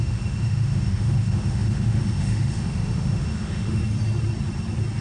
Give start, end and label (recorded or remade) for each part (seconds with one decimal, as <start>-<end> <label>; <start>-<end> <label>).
0.0-3.8 remade; 3.8-5.0 recorded